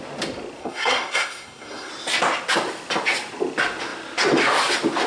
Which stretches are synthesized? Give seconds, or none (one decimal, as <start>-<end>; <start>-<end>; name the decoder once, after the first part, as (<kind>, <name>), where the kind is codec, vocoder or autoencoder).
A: 0.6-1.9 (codec, SNAC)